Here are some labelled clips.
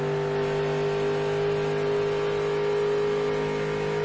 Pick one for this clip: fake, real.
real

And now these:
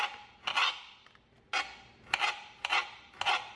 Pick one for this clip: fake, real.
real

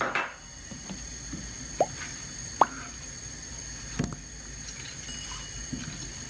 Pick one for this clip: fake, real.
real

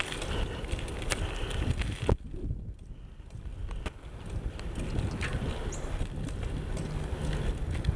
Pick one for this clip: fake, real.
real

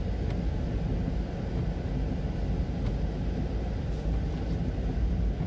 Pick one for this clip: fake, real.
real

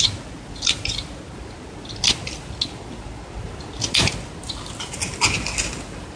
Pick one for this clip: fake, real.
real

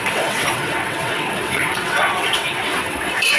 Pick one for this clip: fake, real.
fake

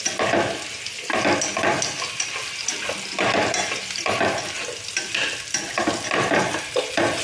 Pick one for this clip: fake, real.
real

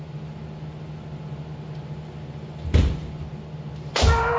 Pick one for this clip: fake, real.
real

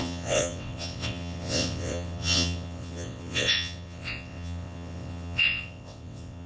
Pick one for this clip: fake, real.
fake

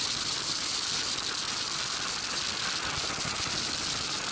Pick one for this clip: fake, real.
real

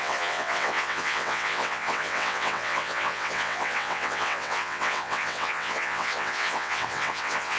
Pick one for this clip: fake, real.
fake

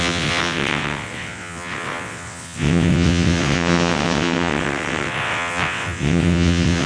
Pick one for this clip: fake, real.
fake